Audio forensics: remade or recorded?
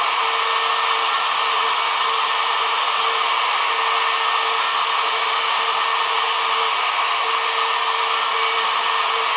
recorded